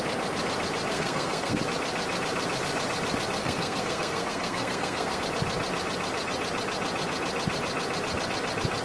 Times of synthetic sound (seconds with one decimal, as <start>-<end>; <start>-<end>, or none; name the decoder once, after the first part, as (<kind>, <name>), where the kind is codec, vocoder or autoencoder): 0.9-1.6 (codec, SNAC); 3.4-5.2